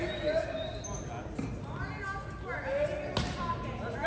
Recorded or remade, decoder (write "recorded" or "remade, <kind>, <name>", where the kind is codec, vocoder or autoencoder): recorded